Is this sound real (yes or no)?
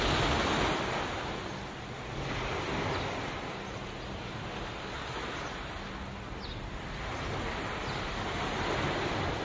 yes